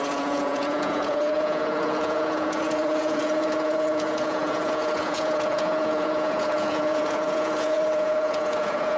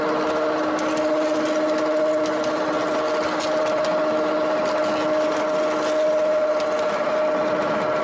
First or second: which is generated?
first